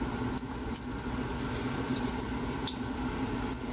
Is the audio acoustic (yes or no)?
yes